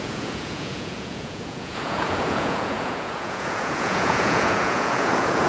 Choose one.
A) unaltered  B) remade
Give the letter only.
B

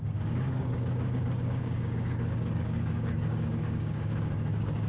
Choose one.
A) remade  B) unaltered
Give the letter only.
A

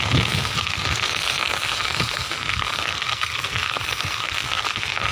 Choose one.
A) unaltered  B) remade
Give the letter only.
B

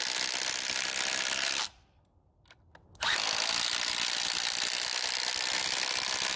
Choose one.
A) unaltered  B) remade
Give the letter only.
A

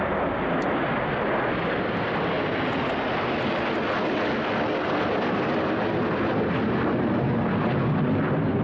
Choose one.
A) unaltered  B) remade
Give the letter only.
A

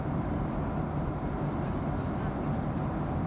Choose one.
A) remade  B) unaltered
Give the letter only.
B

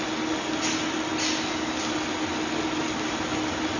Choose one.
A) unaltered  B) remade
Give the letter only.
A